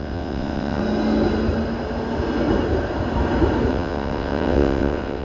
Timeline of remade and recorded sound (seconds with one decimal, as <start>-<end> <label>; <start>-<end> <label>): 0.0-0.8 remade; 0.8-3.7 recorded; 3.7-5.2 remade